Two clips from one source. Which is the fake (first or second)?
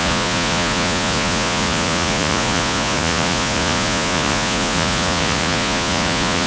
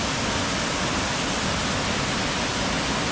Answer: first